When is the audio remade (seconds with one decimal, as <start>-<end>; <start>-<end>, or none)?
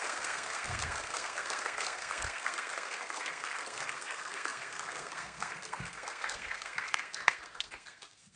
0.0-8.4